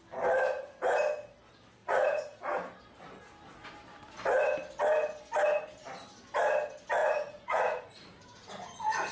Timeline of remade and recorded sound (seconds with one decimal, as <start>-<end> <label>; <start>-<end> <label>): 0.0-1.8 recorded; 1.8-2.4 remade; 2.4-7.0 recorded; 7.0-9.1 remade